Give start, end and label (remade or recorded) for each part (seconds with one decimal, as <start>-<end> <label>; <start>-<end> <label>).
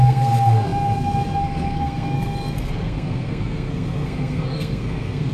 0.0-5.3 remade